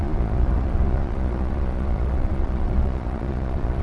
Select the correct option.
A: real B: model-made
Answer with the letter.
B